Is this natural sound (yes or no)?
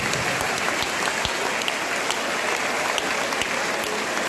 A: yes